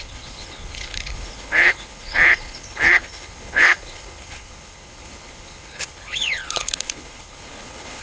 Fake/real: fake